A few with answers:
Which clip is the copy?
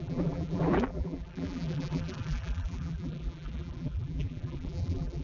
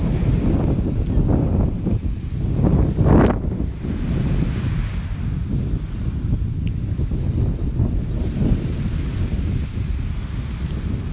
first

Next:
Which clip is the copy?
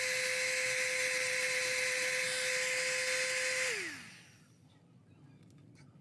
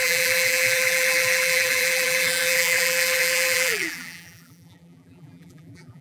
second